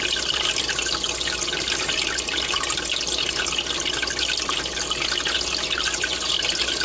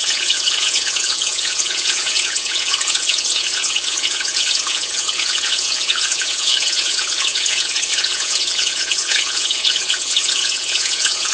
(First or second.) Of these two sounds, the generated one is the second